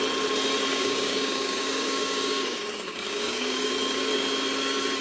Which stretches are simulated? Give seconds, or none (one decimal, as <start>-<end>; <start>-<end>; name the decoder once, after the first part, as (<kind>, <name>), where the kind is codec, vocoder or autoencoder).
0.7-3.7 (codec, DAC)